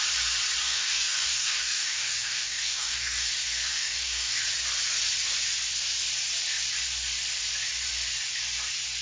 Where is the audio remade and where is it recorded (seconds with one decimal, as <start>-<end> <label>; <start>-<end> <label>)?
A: 0.0-0.6 recorded; 0.6-3.3 remade; 3.3-3.7 recorded; 3.7-4.4 remade; 4.4-9.0 recorded